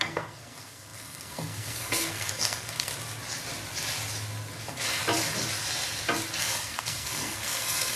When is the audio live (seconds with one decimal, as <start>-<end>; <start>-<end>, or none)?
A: 2.9-4.6; 5.0-6.4